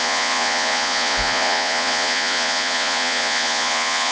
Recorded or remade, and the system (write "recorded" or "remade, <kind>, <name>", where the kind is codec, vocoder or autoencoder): remade, vocoder, Vocos